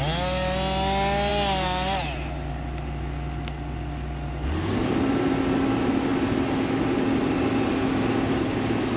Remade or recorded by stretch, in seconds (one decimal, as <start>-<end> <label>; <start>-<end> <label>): 0.0-9.0 recorded